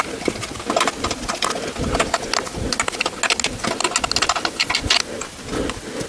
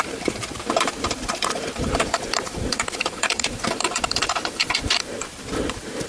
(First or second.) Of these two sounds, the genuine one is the first